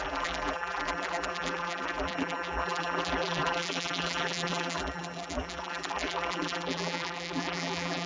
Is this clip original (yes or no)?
no